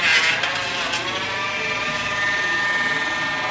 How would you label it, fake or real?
real